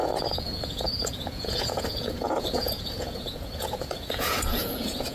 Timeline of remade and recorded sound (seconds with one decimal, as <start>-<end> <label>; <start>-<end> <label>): 0.0-5.1 remade